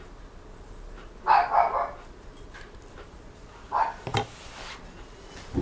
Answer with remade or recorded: recorded